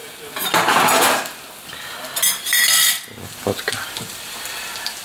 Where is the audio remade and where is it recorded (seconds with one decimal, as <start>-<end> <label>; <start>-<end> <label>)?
0.0-2.5 recorded; 2.5-5.0 remade